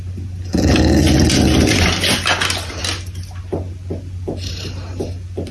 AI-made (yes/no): no